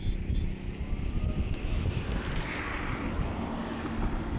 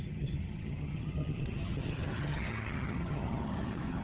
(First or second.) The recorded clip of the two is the first